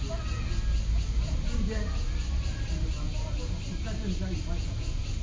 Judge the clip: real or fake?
real